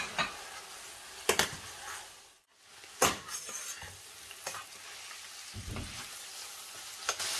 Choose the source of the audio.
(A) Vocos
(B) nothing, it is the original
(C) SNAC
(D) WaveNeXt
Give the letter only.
B